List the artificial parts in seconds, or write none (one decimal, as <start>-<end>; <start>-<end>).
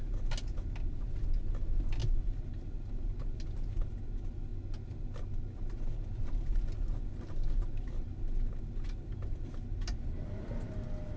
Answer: none